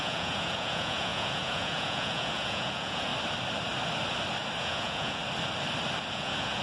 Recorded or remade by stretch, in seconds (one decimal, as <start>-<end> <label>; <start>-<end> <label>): 0.0-3.1 remade; 3.1-4.6 recorded; 4.6-5.2 remade; 5.2-6.1 recorded; 6.1-6.6 remade